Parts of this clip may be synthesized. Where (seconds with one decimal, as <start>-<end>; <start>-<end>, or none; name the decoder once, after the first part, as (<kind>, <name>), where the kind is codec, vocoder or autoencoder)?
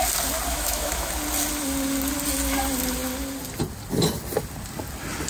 0.5-1.1 (autoencoder, DAC-VAE)